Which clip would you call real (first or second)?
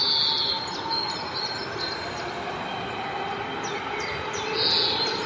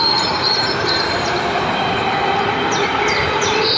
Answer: first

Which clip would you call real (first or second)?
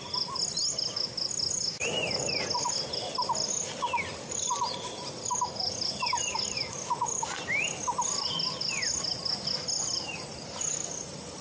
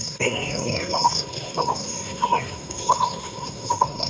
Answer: first